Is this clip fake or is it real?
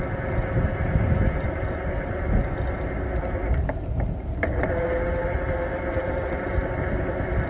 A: real